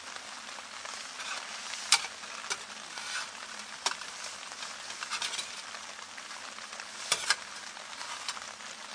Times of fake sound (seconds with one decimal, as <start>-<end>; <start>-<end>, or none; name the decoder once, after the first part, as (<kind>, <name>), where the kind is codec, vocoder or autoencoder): none